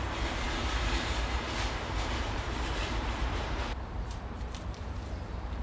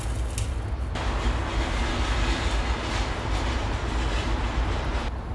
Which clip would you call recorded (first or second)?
second